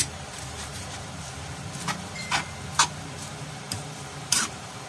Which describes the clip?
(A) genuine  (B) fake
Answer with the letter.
B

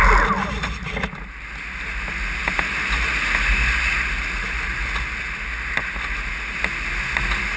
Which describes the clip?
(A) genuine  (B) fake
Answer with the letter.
A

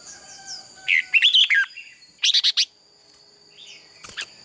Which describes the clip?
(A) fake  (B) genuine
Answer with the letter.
B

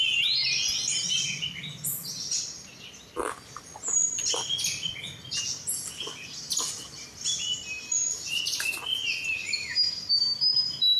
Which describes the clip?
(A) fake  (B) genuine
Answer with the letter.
B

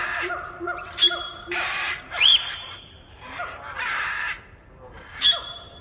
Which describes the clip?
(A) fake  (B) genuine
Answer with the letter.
A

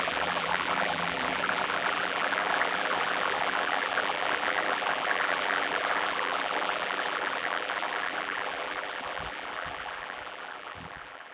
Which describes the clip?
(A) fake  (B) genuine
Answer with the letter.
A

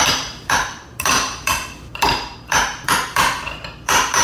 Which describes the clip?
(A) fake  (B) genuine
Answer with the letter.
A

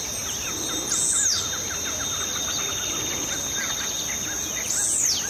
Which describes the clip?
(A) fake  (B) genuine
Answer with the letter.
B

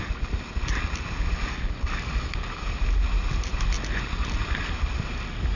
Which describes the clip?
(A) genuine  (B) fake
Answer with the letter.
A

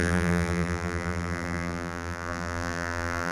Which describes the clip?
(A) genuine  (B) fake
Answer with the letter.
B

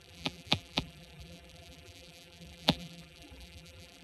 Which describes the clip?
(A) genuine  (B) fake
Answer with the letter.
B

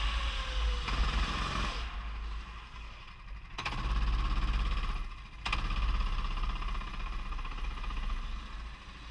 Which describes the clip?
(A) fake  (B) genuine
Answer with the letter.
B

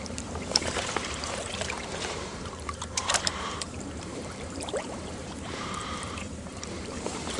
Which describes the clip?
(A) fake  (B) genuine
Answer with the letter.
A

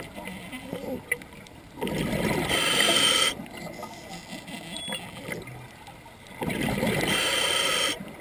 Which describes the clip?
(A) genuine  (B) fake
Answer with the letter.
A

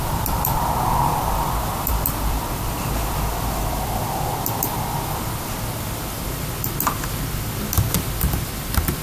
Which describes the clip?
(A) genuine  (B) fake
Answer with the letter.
B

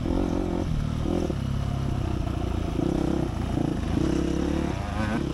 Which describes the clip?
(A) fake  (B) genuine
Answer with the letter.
B